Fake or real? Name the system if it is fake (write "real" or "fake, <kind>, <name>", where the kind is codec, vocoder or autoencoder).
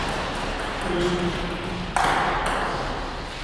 real